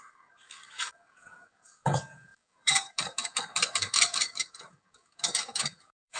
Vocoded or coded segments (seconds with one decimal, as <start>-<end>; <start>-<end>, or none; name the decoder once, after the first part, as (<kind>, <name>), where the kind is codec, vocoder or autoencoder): 0.0-6.2 (codec, DAC)